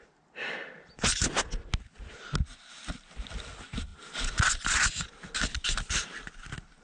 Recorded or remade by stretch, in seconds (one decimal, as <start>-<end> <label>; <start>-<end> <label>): 0.0-6.8 recorded